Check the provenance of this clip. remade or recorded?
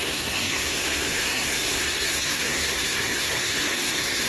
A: remade